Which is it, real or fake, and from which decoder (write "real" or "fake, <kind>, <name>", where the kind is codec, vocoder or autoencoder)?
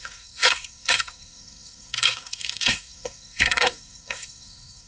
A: fake, codec, SNAC